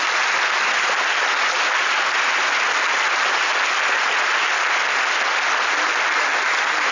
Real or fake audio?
real